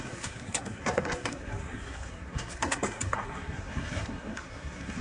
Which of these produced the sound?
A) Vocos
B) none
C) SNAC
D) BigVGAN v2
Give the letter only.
C